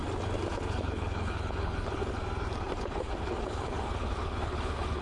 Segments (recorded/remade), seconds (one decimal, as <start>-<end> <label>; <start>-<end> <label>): 0.0-0.5 recorded; 0.5-2.2 remade; 2.2-2.8 recorded; 2.8-5.0 remade